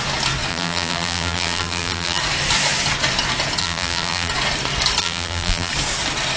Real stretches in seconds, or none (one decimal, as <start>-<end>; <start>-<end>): 0.0-0.5; 2.2-3.6; 4.3-5.0; 5.7-6.4